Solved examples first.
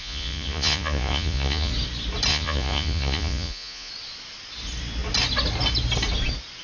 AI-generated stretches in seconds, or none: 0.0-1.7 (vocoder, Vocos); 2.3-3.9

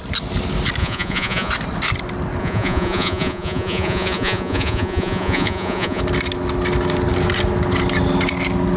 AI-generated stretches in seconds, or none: 0.8-1.5 (vocoder, Vocos); 2.4-6.0

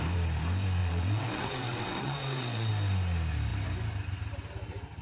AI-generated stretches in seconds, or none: 0.8-2.7 (vocoder, WaveNeXt)

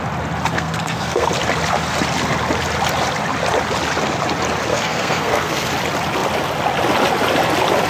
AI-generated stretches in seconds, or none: 0.5-1.3 (codec, SNAC); 4.7-5.7

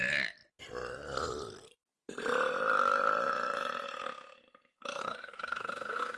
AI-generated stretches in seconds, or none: 5.0-6.2 (codec, SNAC)